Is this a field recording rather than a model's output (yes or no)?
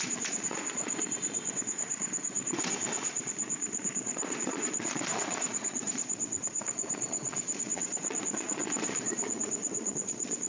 no